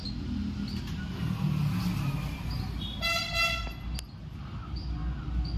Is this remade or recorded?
recorded